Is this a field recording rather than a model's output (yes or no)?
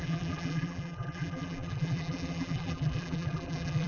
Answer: no